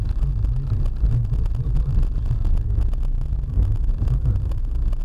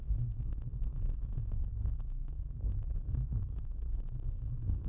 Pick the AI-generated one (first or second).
second